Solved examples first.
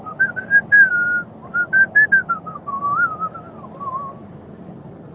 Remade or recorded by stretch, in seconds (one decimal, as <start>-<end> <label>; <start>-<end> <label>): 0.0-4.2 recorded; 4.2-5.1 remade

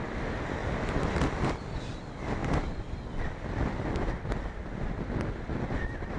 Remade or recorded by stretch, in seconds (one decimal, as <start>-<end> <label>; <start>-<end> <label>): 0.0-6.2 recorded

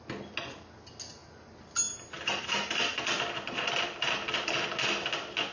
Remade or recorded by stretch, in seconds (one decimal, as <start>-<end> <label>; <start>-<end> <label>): 0.0-5.5 recorded

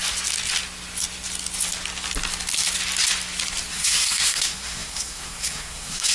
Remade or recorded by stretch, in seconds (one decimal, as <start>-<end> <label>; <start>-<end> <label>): 0.0-3.7 recorded; 3.7-6.1 remade

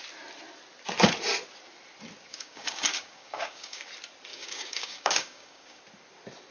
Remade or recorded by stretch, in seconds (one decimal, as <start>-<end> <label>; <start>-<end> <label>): 0.0-2.3 recorded; 2.3-3.9 remade; 3.9-4.3 recorded; 4.3-5.8 remade; 5.8-6.5 recorded

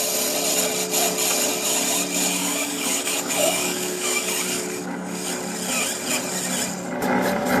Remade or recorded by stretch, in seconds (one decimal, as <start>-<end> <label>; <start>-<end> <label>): 0.0-2.4 recorded; 2.4-5.3 remade; 5.3-7.6 recorded

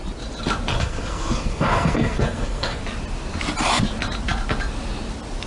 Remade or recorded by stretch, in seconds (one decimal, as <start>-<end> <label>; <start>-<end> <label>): 0.0-0.7 recorded; 0.7-2.8 remade; 2.8-5.5 recorded